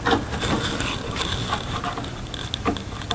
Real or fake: real